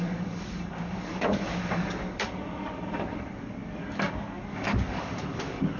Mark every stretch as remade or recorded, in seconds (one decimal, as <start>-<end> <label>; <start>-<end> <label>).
0.0-5.8 remade